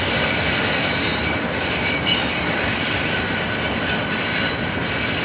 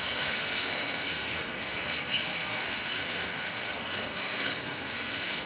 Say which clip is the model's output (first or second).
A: second